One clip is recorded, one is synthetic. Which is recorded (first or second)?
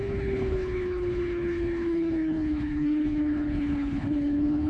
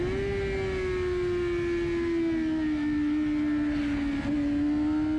second